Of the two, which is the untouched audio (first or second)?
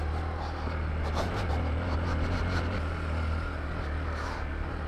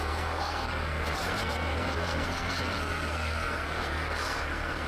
first